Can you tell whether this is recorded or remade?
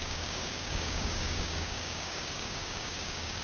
remade